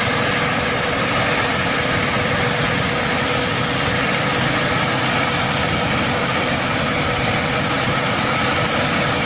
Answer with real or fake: real